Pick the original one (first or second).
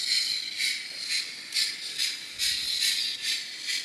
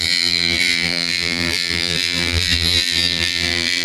first